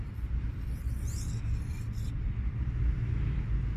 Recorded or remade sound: recorded